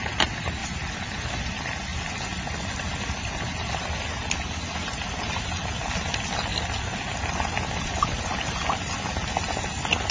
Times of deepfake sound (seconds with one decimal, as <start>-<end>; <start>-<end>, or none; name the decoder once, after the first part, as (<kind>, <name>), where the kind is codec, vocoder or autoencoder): 0.6-1.4 (vocoder, BigVGAN v2); 6.5-7.3